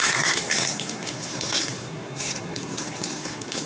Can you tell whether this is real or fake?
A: fake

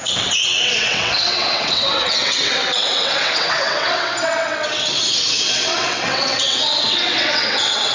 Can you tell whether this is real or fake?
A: fake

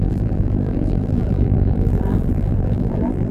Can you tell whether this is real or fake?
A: fake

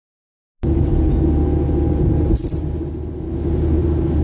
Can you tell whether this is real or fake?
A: real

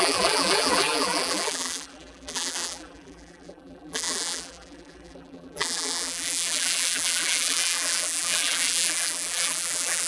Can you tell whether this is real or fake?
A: fake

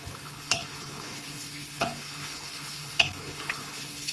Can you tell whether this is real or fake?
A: fake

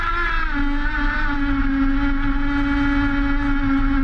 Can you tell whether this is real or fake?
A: real